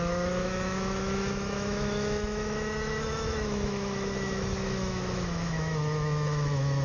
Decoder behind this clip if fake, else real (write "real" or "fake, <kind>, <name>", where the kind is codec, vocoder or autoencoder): fake, autoencoder, DAC-VAE